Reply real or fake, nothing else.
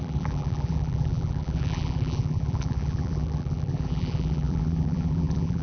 fake